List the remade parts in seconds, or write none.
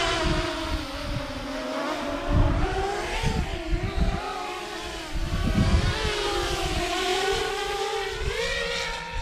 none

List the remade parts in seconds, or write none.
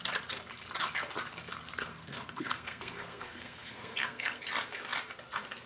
1.9-4.4 (codec, SNAC)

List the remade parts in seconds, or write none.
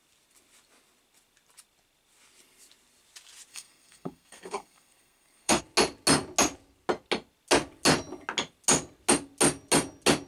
3.5-5.6 (codec, SNAC)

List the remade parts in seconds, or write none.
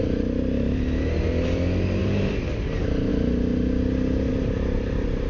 0.0-3.1 (vocoder, BigVGAN v2); 4.3-5.3